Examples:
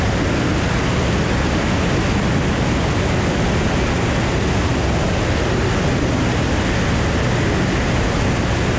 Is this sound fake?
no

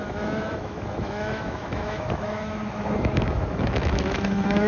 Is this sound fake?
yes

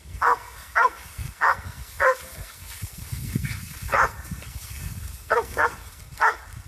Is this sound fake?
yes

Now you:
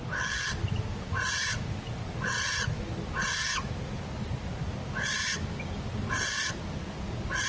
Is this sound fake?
no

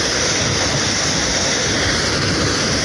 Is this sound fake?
no